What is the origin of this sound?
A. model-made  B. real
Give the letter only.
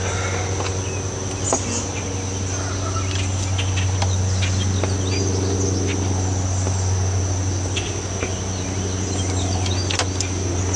B